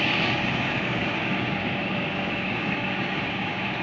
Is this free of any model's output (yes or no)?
no